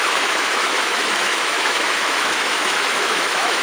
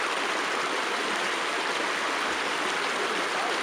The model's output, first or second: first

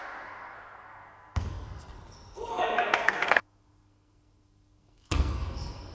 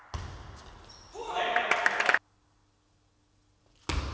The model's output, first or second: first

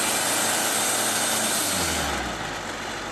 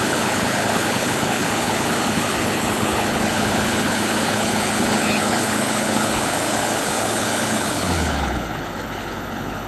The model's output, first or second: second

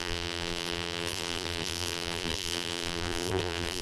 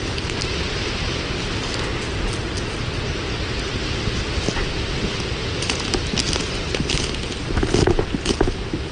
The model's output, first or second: first